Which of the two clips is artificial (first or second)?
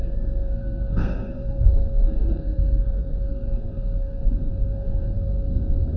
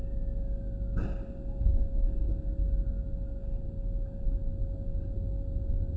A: first